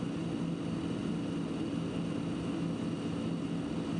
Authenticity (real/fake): real